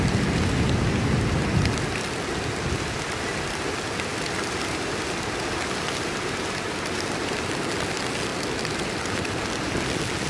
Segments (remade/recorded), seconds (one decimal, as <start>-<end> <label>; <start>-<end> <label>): 0.0-10.3 recorded